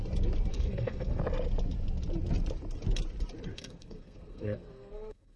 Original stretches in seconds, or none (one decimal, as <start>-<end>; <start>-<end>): 0.0-0.5; 1.2-3.5

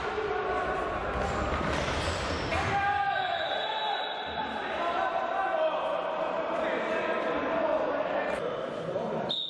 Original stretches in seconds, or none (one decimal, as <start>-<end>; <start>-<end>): 0.0-9.5

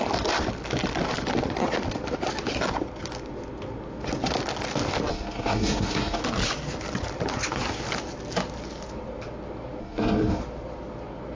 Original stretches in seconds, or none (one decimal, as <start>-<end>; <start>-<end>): 0.0-5.1; 6.2-9.8; 10.4-11.3